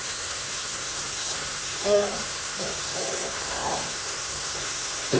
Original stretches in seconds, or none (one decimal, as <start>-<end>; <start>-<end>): none